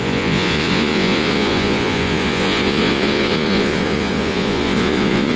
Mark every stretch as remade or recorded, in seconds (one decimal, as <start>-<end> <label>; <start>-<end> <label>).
0.0-5.4 remade